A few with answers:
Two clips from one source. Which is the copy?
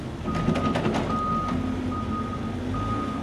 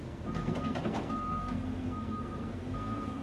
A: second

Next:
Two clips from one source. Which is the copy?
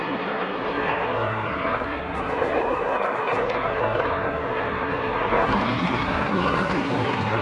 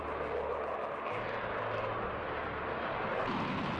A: first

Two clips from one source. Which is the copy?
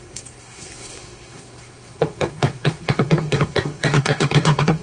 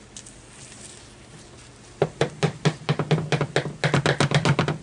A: first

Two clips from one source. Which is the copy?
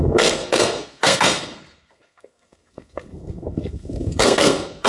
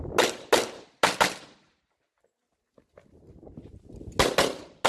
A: first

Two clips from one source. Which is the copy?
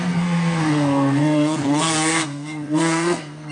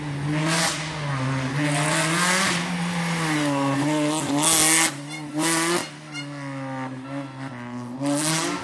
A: first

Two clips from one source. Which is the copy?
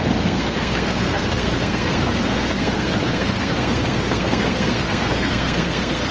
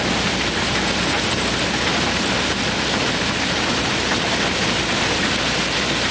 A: first